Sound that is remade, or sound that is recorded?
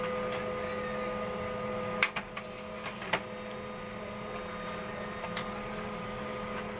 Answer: recorded